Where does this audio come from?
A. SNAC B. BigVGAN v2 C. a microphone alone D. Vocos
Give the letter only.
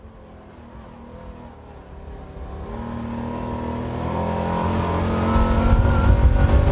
C